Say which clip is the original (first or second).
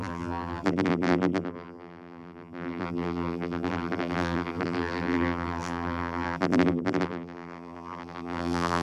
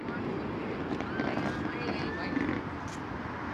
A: second